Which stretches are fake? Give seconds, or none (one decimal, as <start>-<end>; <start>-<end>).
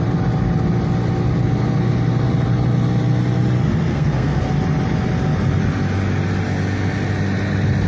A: 3.9-4.5